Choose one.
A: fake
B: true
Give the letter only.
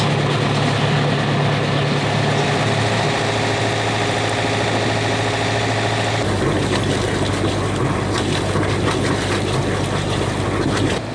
B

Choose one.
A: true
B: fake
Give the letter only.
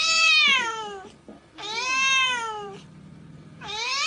B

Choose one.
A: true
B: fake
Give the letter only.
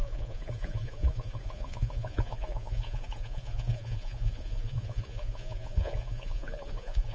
B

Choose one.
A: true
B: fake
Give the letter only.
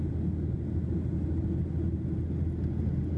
A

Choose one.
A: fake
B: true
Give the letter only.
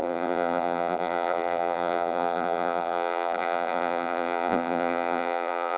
A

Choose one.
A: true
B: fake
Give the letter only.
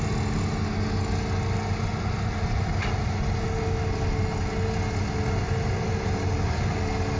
A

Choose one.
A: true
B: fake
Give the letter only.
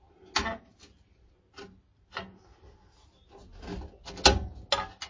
A